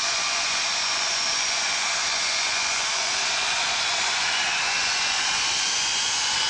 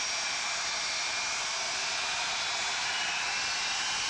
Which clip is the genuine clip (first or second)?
second